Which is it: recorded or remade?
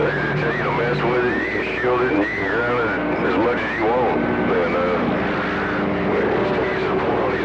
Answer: recorded